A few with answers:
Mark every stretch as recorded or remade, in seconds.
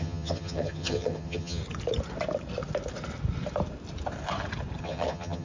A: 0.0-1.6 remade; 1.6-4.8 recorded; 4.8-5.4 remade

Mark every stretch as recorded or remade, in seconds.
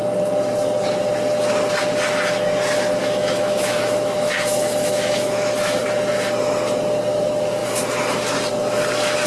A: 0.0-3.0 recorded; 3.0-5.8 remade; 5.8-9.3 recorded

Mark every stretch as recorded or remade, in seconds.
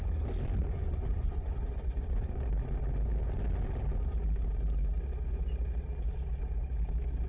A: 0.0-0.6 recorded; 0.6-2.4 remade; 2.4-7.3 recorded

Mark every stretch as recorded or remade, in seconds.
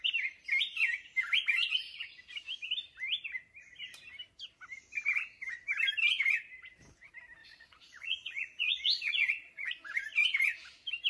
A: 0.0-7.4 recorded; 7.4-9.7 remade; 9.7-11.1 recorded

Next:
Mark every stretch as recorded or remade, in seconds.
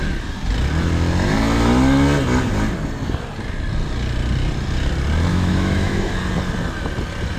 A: 0.0-5.3 recorded; 5.3-6.1 remade; 6.1-7.4 recorded